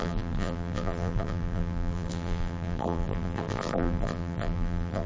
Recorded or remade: remade